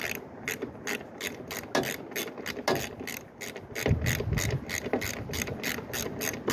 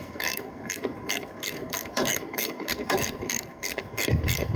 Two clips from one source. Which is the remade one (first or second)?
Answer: second